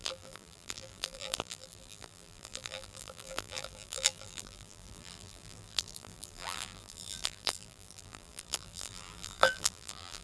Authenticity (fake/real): fake